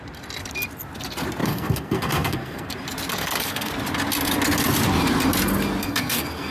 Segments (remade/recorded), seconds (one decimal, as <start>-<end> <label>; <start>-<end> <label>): 0.0-1.4 recorded; 1.4-2.7 remade; 2.7-3.1 recorded; 3.1-3.7 remade; 3.7-5.8 recorded; 5.8-6.5 remade

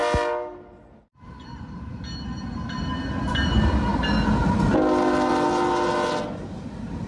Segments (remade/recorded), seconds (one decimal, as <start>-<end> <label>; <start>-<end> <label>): 0.0-7.1 recorded

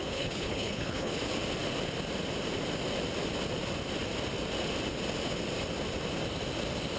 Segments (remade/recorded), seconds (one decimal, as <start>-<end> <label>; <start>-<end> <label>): 0.0-1.2 remade; 1.2-7.0 recorded

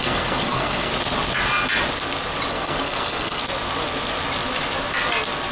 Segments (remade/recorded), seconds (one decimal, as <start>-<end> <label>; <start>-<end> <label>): 0.0-0.9 remade; 0.9-2.5 recorded; 2.5-3.4 remade; 3.4-5.5 recorded